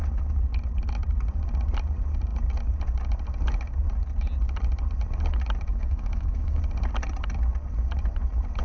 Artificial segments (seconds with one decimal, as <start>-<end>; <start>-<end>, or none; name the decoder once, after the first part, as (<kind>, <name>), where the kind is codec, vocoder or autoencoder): 5.7-6.6 (autoencoder, DAC-VAE)